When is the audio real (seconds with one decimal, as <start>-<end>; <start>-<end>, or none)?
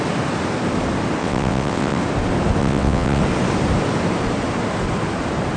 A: 0.0-1.2; 2.0-2.6; 3.2-5.6